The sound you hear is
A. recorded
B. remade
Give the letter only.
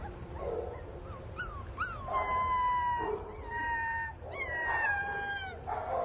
A